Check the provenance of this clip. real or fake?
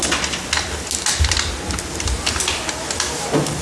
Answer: real